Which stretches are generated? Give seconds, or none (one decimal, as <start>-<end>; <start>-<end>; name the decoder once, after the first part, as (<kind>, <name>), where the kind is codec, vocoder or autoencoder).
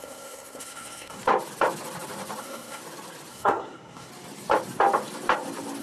0.0-1.2 (codec, SNAC); 2.4-2.8; 3.3-4.1